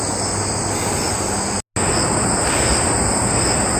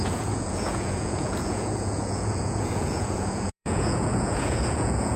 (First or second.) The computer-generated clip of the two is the second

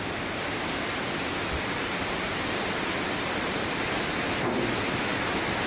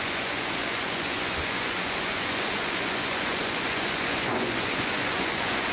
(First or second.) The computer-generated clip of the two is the second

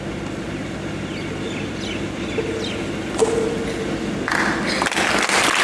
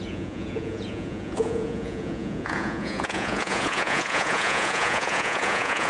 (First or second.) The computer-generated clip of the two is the second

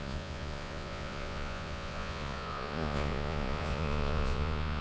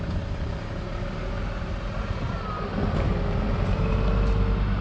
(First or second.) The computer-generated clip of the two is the first